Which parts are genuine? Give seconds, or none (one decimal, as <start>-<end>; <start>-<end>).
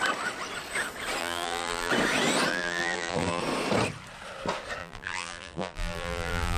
0.0-1.2; 1.9-2.5; 3.4-4.8